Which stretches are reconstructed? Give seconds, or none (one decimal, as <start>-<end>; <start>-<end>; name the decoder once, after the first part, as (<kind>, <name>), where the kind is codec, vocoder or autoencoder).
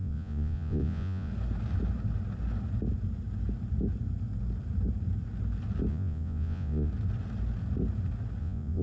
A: 0.0-1.3 (vocoder, Vocos); 5.9-6.9; 8.4-8.8